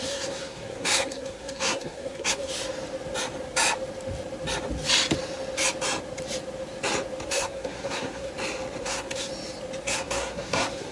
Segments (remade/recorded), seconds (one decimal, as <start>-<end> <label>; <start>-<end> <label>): 0.0-2.5 remade; 2.5-7.3 recorded; 7.3-8.3 remade; 8.3-8.8 recorded; 8.8-9.3 remade; 9.3-9.8 recorded; 9.8-10.9 remade